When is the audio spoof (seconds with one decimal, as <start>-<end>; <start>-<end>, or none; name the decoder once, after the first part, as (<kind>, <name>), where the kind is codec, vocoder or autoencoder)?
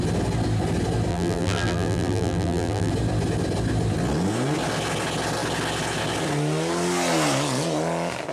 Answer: 1.1-2.9 (vocoder, BigVGAN v2)